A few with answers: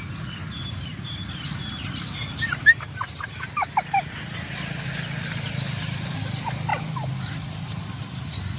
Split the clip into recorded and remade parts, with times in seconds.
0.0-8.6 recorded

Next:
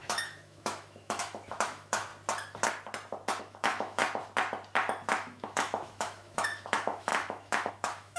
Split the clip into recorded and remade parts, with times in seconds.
0.0-2.1 remade; 2.1-3.4 recorded; 3.4-4.0 remade; 4.0-5.1 recorded; 5.1-8.2 remade